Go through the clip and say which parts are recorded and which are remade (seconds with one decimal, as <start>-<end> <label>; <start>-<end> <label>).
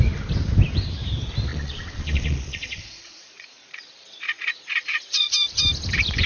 0.0-1.5 recorded; 1.5-5.3 remade; 5.3-6.3 recorded